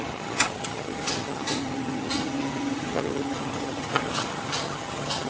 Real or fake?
fake